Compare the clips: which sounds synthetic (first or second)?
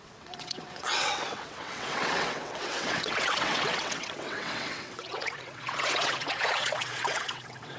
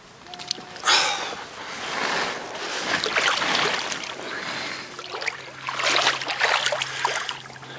first